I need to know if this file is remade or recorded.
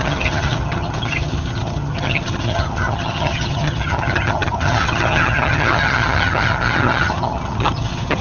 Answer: remade